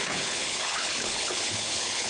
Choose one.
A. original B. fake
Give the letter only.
B